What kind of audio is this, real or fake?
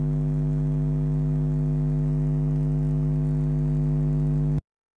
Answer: real